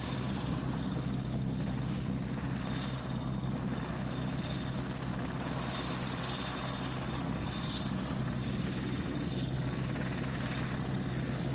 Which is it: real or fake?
real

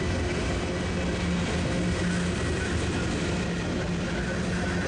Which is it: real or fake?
real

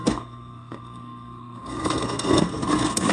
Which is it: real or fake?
fake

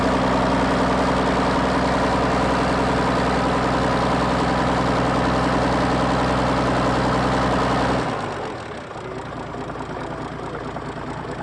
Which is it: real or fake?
real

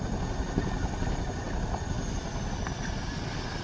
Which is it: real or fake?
real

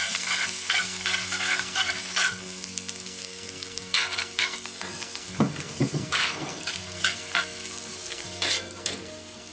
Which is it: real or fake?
fake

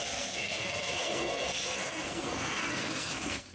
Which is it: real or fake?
fake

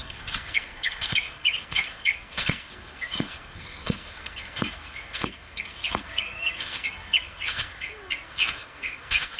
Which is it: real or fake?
fake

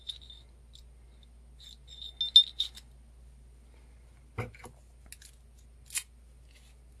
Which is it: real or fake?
real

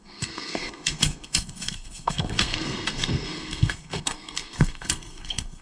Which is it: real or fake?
fake